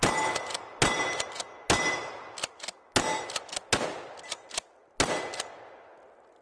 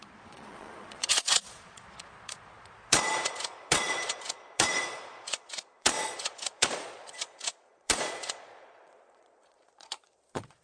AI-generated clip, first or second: second